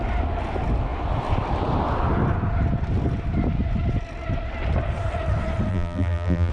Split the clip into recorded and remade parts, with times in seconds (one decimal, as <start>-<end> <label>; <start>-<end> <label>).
0.0-5.7 recorded; 5.7-6.5 remade